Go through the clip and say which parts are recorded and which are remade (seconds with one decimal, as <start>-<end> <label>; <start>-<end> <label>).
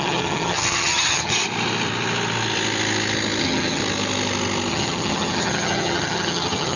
0.0-1.3 remade; 1.3-3.4 recorded; 3.4-3.8 remade; 3.8-4.7 recorded; 4.7-6.8 remade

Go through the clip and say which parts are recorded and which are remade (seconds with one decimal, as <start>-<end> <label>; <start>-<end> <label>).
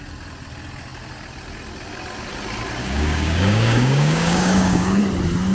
0.0-2.8 recorded; 2.8-5.0 remade; 5.0-5.5 recorded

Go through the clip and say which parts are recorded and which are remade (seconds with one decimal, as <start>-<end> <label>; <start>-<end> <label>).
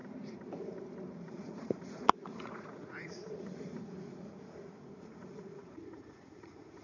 0.0-1.3 recorded; 1.3-6.8 remade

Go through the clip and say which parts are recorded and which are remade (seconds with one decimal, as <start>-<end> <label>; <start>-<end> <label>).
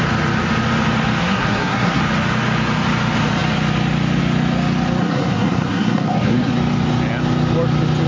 0.0-1.2 recorded; 1.2-2.0 remade; 2.0-5.0 recorded; 5.0-6.5 remade; 6.5-8.1 recorded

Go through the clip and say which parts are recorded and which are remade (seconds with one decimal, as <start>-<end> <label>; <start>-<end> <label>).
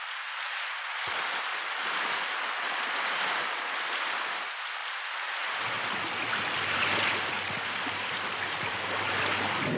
0.0-4.8 recorded; 4.8-8.8 remade; 8.8-9.8 recorded